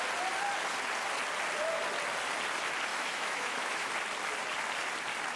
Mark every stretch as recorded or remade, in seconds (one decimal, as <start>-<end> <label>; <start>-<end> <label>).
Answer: 0.0-2.9 recorded; 2.9-3.9 remade; 3.9-5.4 recorded